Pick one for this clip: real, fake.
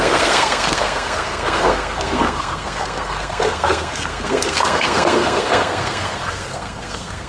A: fake